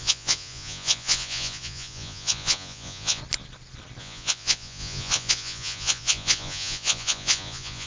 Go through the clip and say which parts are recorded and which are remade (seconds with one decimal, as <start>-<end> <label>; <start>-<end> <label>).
0.0-3.2 remade; 3.2-4.0 recorded; 4.0-7.9 remade